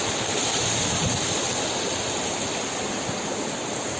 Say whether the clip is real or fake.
real